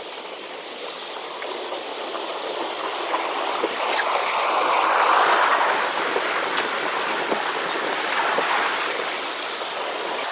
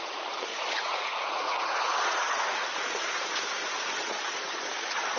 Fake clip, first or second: second